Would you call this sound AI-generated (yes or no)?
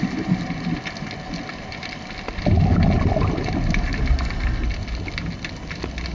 no